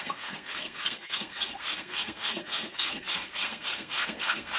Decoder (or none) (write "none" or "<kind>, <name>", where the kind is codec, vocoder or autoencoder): codec, SNAC